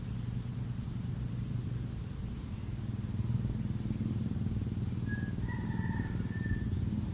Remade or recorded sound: recorded